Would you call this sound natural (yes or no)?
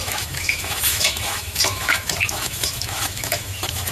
no